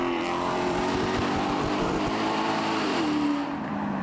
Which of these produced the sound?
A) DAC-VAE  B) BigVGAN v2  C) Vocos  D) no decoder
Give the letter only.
B